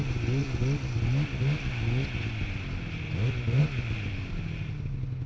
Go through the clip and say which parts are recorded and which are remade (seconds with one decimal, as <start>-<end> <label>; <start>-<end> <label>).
0.0-5.3 recorded